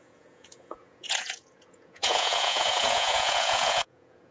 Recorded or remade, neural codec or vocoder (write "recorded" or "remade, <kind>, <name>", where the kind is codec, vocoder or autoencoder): remade, vocoder, Vocos